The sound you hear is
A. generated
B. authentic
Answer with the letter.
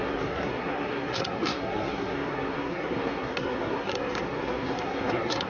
A